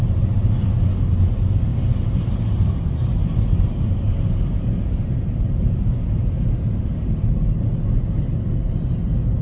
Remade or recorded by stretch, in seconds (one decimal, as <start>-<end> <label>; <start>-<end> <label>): 0.0-1.7 recorded; 1.7-6.9 remade; 6.9-9.4 recorded